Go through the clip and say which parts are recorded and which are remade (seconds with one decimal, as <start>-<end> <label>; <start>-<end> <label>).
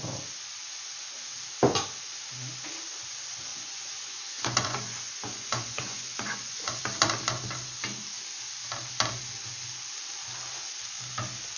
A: 0.0-3.5 recorded; 3.5-6.8 remade; 6.8-11.6 recorded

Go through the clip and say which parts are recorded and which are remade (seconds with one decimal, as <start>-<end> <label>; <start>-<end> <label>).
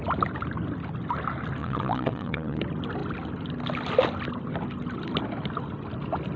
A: 0.0-1.6 recorded; 1.6-2.6 remade; 2.6-6.4 recorded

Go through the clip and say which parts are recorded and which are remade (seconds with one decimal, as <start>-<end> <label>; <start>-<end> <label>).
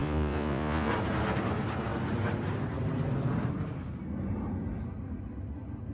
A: 0.0-0.9 remade; 0.9-5.9 recorded